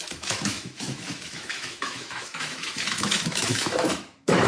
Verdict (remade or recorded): remade